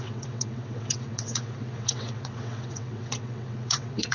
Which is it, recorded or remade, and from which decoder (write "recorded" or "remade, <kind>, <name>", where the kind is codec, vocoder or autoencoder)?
remade, vocoder, WaveNeXt